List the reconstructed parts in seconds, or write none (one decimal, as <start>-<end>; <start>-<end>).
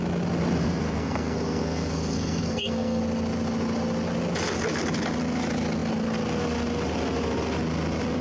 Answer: 0.6-3.0